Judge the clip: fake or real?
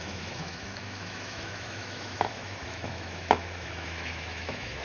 fake